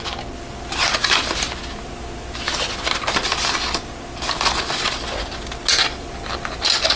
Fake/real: real